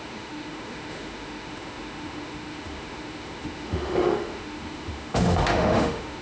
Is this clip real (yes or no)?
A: no